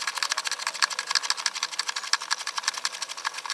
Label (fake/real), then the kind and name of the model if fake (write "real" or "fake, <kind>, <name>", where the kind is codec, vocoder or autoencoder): real